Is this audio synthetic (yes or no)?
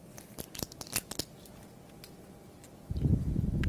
no